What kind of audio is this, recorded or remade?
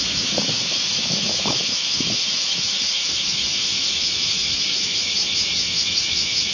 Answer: remade